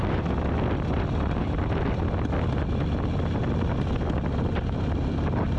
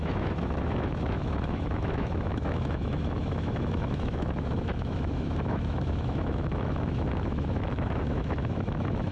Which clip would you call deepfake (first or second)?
second